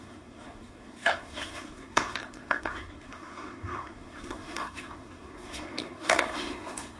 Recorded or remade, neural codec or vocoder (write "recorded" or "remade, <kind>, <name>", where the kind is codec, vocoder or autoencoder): remade, codec, SNAC